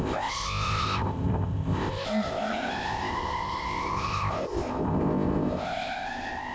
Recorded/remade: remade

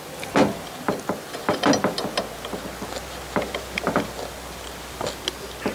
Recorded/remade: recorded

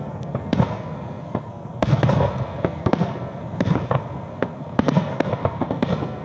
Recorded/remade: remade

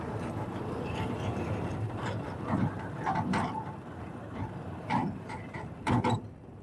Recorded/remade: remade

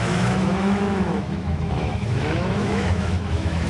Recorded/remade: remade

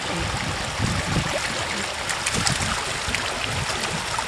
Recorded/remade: recorded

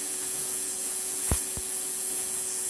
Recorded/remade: remade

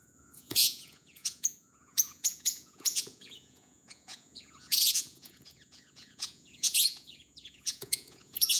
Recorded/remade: remade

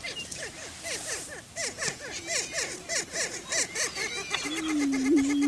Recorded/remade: recorded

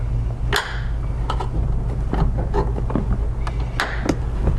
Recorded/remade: recorded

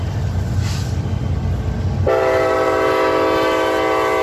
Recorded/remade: recorded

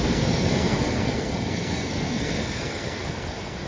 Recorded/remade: remade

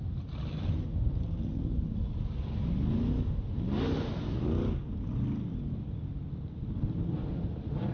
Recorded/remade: recorded